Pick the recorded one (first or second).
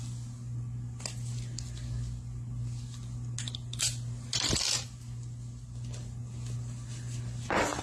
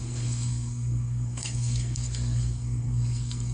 first